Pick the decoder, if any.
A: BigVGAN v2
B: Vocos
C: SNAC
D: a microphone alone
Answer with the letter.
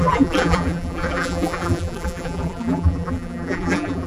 A